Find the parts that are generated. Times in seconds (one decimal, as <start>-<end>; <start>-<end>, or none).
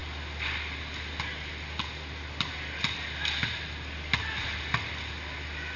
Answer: none